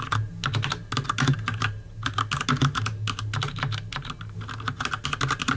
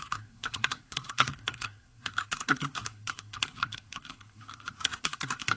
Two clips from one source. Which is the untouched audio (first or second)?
first